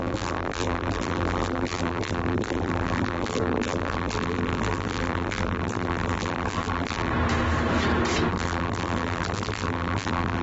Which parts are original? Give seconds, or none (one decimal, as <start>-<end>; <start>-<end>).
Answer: 7.1-8.3

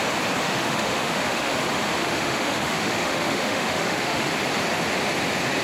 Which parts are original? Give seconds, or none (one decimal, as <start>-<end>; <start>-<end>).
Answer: 0.0-0.4; 1.5-2.0; 4.3-5.6

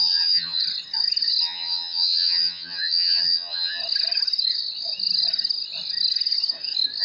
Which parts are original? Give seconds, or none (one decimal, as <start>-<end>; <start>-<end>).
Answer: 0.6-1.4; 3.8-7.0

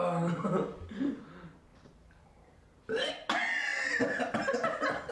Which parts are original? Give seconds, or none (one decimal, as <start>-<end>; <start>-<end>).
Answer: 0.0-1.7; 3.1-5.1

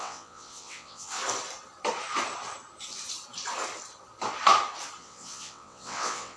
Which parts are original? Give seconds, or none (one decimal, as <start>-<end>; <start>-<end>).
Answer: 1.2-5.0

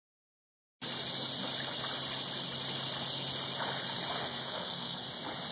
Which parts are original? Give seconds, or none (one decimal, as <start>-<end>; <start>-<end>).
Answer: 0.0-4.2; 5.1-5.5

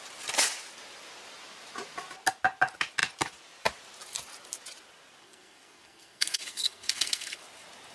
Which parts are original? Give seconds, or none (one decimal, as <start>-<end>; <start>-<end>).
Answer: 0.0-5.2; 7.4-7.9

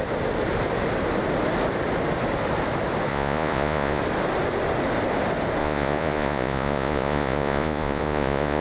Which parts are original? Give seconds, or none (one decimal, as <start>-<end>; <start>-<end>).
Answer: 0.0-3.1; 4.0-5.6